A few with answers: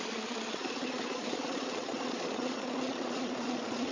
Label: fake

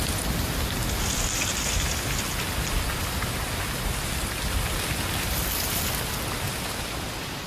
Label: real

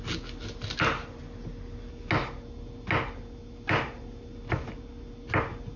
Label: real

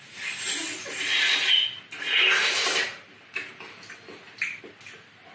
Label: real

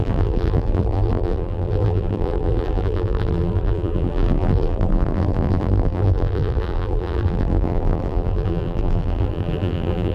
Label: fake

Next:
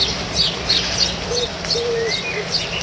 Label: fake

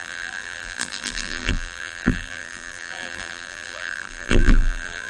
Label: fake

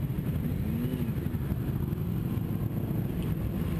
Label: real